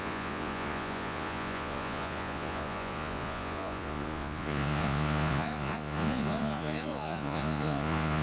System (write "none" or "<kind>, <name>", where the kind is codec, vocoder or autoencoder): vocoder, Vocos